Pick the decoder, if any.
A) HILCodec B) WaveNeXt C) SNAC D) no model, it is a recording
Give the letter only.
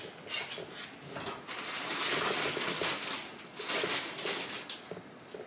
D